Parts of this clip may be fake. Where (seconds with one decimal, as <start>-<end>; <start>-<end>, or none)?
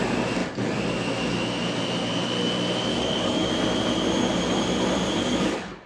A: 2.9-3.5; 5.2-5.9